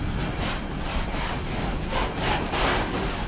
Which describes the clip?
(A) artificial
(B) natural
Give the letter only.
B